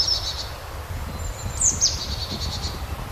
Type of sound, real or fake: fake